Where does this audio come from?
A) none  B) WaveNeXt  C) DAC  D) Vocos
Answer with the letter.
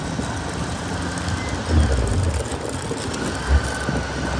A